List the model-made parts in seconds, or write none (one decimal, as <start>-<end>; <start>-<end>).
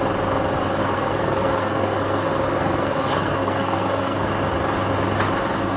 0.8-4.3